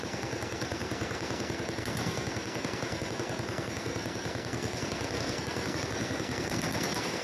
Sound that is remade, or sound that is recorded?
remade